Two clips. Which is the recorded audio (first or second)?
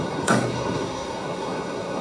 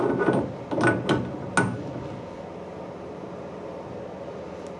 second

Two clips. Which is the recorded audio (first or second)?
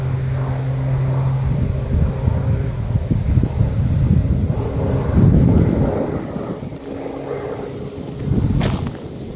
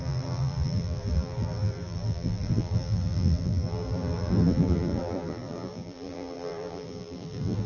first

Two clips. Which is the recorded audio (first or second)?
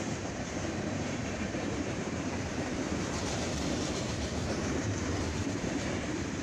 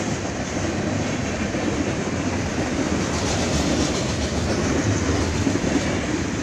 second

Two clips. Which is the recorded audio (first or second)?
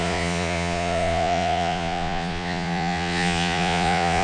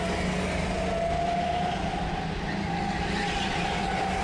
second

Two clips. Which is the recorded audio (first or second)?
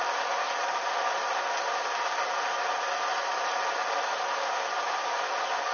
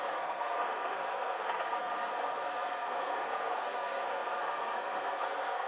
first